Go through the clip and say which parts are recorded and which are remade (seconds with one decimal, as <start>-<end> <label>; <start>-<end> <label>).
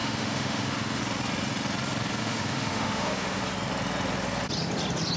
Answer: 0.0-1.0 remade; 1.0-2.2 recorded; 2.2-3.4 remade; 3.4-5.2 recorded